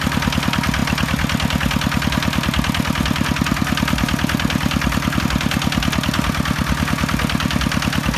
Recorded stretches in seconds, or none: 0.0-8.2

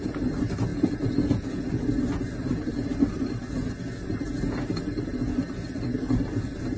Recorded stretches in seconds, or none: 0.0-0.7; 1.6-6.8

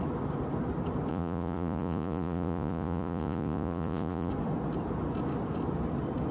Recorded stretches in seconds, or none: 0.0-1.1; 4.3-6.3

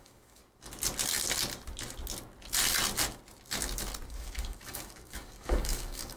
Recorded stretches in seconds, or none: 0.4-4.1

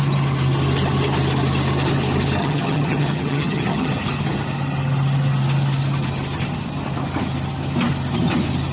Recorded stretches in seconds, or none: 0.0-2.4; 3.9-8.7

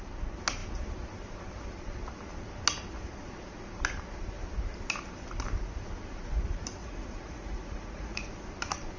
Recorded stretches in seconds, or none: 0.0-6.8; 8.3-9.0

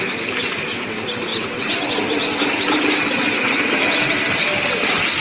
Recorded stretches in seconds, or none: 0.0-5.2

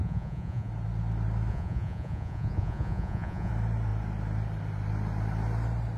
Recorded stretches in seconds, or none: 0.7-1.5; 3.5-6.0